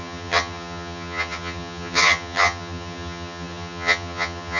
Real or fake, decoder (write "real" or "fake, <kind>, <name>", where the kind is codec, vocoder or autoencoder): fake, vocoder, HiFi-GAN